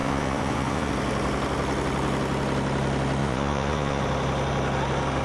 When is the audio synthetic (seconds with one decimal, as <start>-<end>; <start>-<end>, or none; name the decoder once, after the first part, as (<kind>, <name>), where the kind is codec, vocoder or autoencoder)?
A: 0.0-0.9 (vocoder, Vocos); 3.2-4.0